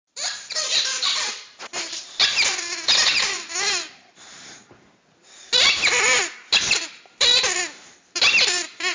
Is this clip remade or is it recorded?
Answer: remade